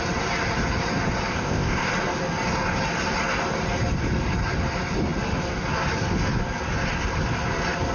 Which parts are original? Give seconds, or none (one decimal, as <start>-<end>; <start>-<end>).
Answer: 0.0-1.3; 1.9-7.9